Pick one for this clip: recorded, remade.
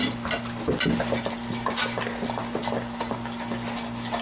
recorded